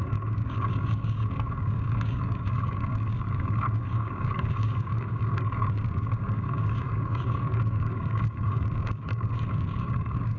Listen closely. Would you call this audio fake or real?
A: fake